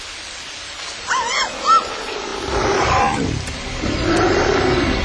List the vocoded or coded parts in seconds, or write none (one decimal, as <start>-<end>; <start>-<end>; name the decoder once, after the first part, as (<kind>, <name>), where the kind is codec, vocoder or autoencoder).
0.0-5.0 (vocoder, BigVGAN v2)